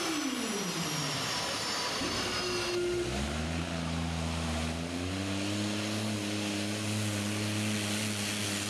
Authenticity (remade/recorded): recorded